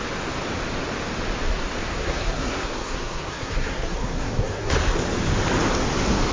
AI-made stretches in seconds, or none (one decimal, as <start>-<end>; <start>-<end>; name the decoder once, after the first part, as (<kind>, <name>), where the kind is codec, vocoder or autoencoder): 1.9-4.7 (codec, SNAC)